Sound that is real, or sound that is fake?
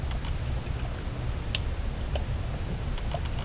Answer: real